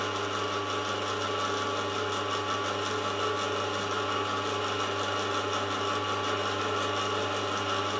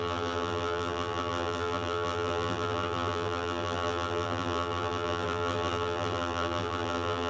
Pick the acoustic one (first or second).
first